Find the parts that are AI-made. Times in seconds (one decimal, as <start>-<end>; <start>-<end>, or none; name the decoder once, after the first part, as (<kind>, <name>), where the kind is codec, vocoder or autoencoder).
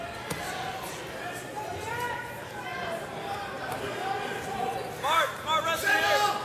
2.7-3.6 (vocoder, BigVGAN v2)